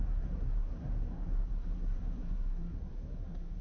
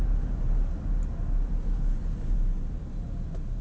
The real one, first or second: second